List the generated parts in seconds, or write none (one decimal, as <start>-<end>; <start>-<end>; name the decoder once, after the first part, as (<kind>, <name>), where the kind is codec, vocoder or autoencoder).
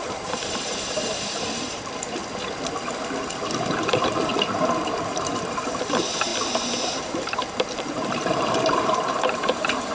0.0-2.2 (vocoder, BigVGAN v2); 3.8-4.3; 5.0-6.3; 7.0-9.9